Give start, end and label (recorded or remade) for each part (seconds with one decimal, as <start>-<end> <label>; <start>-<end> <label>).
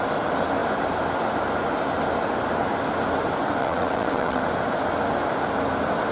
0.0-3.6 recorded; 3.6-4.4 remade; 4.4-6.1 recorded